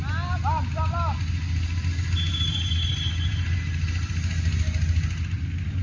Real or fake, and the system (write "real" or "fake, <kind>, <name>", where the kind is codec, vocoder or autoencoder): real